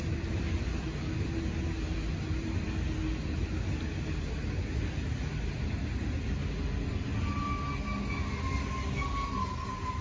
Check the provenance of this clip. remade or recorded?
recorded